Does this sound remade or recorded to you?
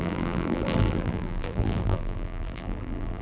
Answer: remade